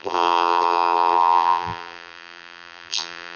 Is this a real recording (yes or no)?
no